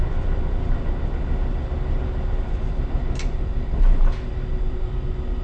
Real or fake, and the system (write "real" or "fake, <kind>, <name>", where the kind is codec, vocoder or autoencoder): real